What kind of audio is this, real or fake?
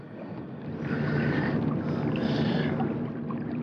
real